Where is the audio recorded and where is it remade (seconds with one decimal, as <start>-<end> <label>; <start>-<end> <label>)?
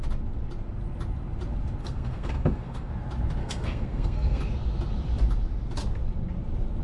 0.0-1.8 recorded; 1.8-2.9 remade; 2.9-3.4 recorded; 3.4-4.4 remade; 4.4-6.8 recorded